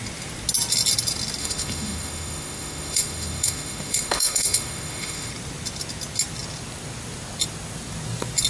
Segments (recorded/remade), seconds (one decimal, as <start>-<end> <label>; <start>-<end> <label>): 0.0-1.4 recorded; 1.4-5.3 remade; 5.3-8.5 recorded